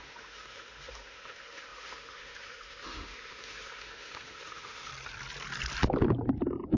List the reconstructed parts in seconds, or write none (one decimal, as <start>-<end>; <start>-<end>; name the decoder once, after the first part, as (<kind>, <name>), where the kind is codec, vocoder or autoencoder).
0.0-4.9 (autoencoder, DAC-VAE)